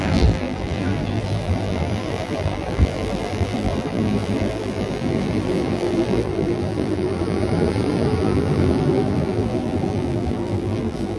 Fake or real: fake